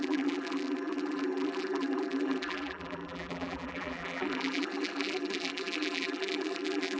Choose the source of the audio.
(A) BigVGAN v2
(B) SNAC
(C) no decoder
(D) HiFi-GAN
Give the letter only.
A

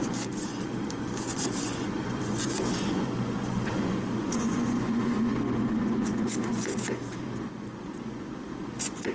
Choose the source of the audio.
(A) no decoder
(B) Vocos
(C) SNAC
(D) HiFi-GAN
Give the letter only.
B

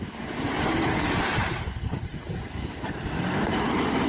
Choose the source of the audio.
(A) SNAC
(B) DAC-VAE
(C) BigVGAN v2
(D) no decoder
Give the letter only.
C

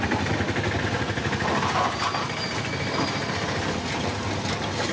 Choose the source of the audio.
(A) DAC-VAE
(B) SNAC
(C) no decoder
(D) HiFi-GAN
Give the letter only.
C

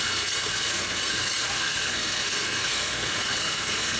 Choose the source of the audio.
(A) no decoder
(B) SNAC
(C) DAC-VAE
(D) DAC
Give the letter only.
B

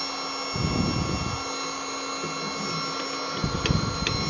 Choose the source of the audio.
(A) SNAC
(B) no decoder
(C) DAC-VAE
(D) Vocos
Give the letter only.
B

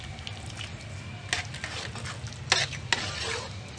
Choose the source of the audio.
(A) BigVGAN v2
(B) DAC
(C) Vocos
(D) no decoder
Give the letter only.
D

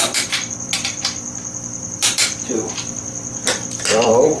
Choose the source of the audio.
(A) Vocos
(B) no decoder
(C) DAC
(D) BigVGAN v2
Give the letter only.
D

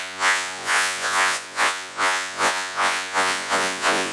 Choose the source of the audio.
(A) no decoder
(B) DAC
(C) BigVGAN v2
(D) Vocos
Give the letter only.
D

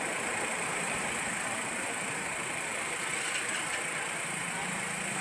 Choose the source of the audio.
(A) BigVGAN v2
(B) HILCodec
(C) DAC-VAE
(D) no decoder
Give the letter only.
A